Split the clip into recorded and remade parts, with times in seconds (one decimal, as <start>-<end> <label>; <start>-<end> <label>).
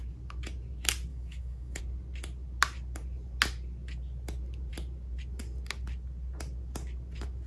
0.0-1.1 recorded; 1.1-1.8 remade; 1.8-7.5 recorded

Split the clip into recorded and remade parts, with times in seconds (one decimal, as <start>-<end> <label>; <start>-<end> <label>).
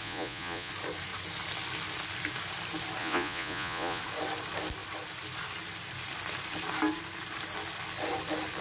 0.0-0.7 remade; 0.7-3.0 recorded; 3.0-4.0 remade; 4.0-8.6 recorded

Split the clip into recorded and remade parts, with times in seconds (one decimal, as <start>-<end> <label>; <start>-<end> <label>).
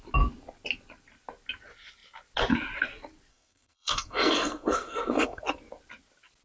0.0-3.3 recorded; 3.3-5.4 remade; 5.4-6.4 recorded